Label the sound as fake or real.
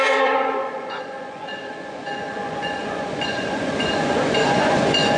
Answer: fake